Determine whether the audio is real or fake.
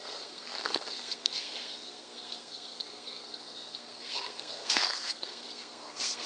fake